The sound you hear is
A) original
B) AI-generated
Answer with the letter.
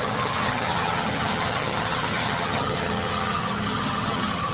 B